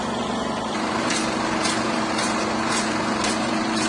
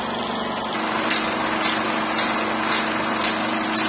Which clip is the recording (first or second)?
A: second